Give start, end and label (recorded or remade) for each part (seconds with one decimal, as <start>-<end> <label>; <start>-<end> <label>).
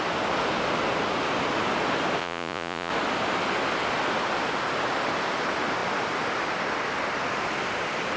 0.0-2.2 recorded; 2.2-2.9 remade; 2.9-8.2 recorded